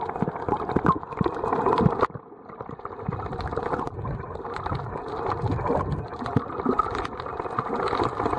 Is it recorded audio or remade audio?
recorded